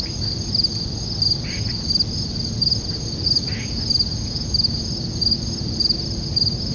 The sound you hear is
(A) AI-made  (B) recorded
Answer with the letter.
B